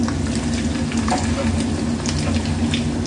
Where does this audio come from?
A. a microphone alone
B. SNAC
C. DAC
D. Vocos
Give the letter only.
A